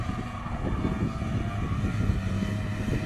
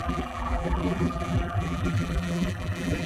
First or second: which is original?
first